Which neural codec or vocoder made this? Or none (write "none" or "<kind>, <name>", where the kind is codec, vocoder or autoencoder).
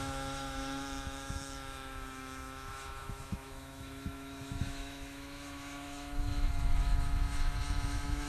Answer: autoencoder, DAC-VAE